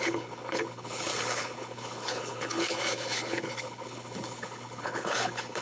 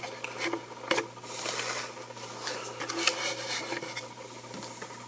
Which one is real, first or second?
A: second